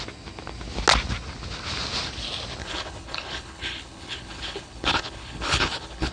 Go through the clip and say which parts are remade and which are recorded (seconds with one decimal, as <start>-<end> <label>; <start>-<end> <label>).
0.0-2.6 recorded; 2.6-6.1 remade